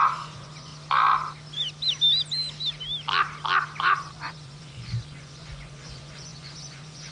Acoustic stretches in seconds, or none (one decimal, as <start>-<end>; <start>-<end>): 0.7-3.8